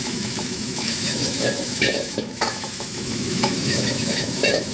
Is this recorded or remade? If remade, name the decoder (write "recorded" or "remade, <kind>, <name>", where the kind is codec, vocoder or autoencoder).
remade, autoencoder, DAC-VAE